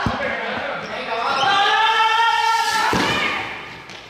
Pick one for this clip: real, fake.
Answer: real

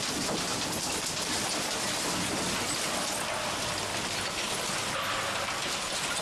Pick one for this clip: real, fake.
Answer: real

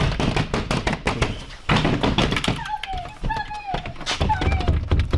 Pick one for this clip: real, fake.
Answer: real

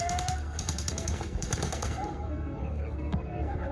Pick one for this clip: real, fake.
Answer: fake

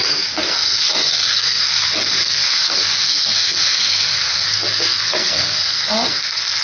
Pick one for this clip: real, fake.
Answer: fake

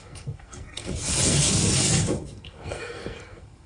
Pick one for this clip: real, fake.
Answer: fake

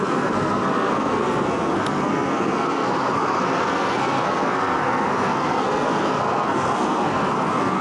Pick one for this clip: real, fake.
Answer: fake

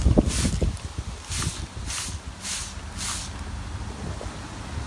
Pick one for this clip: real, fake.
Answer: real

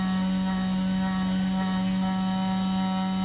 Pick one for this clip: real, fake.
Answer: real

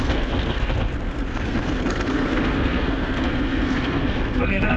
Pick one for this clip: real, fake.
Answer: fake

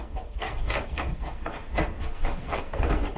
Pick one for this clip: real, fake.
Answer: fake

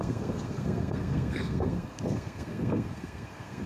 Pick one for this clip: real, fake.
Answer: fake